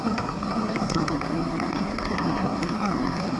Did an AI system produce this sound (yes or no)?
yes